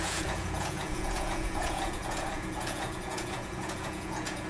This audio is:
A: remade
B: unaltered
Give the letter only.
A